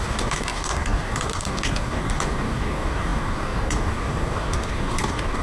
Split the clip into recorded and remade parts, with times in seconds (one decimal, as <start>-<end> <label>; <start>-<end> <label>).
0.0-5.4 remade